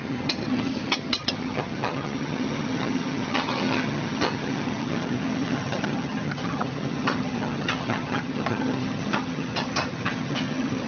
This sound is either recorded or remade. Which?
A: remade